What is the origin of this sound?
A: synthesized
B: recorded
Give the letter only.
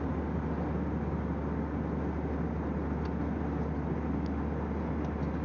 B